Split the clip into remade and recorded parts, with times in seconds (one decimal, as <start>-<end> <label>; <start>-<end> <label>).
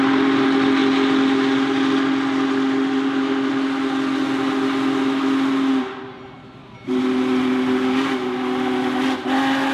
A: 0.0-9.7 recorded